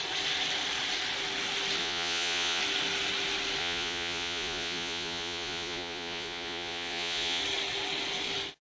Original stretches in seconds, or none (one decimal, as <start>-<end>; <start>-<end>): 0.0-1.8; 2.6-3.6; 7.4-8.6